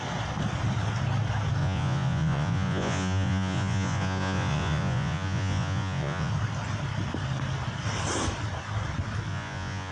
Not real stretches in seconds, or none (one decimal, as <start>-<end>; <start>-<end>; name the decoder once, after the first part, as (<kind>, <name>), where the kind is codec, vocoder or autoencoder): 1.6-6.3 (vocoder, Vocos); 9.3-9.9

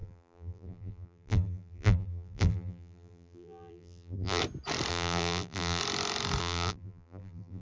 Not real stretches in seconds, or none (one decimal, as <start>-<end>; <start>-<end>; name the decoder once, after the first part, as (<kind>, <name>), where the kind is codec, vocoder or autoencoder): 0.0-4.4 (vocoder, BigVGAN v2); 4.9-5.8; 6.4-7.6

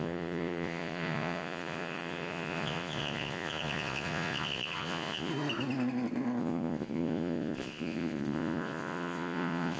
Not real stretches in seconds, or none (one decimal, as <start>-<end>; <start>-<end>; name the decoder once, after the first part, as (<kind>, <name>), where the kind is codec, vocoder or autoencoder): 0.0-5.3 (vocoder, Vocos); 6.4-9.8

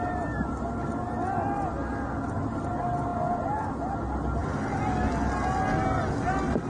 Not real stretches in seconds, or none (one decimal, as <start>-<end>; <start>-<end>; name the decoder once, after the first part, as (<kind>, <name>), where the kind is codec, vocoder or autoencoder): none

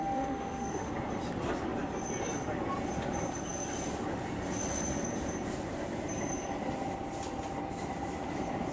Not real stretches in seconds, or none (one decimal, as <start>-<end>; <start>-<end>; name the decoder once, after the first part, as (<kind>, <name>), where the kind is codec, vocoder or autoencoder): 0.0-0.9 (autoencoder, DAC-VAE)